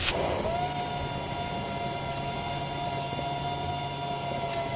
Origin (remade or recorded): recorded